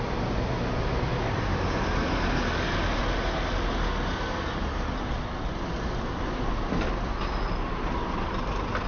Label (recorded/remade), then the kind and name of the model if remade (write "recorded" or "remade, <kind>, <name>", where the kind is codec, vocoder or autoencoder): recorded